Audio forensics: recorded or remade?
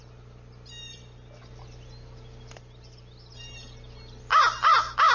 recorded